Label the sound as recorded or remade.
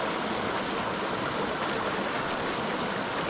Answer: recorded